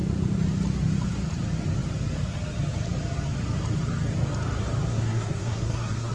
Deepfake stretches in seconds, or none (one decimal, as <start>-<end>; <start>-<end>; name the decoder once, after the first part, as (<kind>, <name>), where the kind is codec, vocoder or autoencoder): 4.9-6.1 (codec, SNAC)